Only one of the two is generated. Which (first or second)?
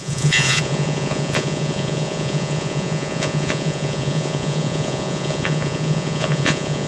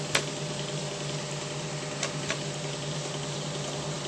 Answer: first